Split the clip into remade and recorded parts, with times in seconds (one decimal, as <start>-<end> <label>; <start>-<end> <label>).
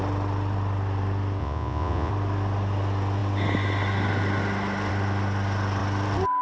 0.0-1.4 recorded; 1.4-2.1 remade; 2.1-6.4 recorded